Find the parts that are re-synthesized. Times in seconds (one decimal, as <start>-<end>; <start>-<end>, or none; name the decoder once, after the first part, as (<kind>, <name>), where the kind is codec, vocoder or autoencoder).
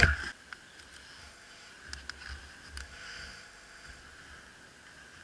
1.2-1.7 (autoencoder, DAC-VAE); 2.8-4.0